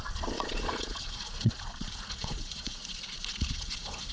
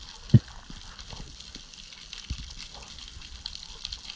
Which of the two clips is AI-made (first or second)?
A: first